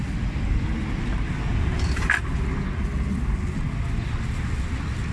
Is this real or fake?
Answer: real